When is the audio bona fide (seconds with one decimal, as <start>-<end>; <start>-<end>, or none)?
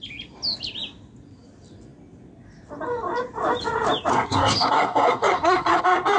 0.0-4.1; 5.8-6.2